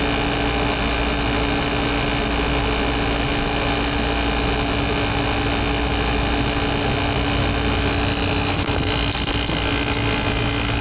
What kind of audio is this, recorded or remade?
recorded